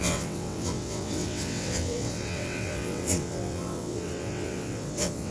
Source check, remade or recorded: remade